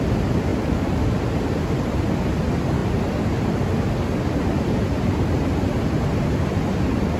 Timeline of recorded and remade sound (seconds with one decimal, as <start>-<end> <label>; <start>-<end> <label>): 0.0-7.2 recorded